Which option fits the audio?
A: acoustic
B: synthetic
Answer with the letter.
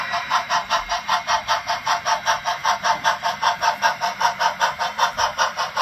B